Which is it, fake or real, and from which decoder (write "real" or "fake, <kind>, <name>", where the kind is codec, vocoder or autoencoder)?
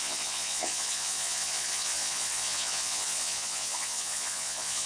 fake, vocoder, Vocos